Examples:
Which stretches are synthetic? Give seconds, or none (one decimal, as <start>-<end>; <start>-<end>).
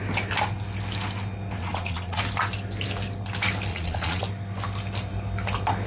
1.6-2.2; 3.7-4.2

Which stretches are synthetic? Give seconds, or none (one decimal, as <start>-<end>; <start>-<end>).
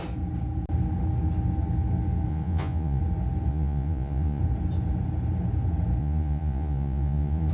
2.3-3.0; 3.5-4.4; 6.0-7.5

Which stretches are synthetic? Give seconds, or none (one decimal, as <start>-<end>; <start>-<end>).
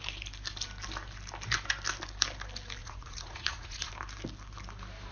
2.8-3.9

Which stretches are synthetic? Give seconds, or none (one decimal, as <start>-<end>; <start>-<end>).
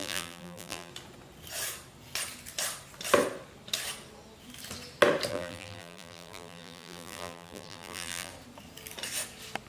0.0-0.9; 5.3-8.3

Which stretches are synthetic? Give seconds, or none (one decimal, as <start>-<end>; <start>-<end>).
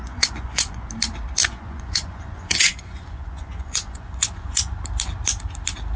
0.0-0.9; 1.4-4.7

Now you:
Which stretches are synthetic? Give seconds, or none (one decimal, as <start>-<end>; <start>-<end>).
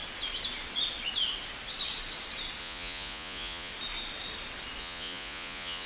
2.6-3.7; 4.8-5.9